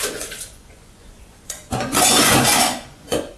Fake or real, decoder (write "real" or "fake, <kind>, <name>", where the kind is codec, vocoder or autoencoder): fake, vocoder, Vocos